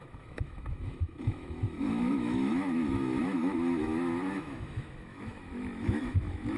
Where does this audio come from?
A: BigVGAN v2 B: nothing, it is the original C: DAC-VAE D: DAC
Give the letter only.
C